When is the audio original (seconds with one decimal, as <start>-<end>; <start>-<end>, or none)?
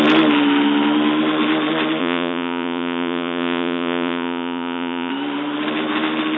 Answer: 0.0-2.0; 5.1-6.4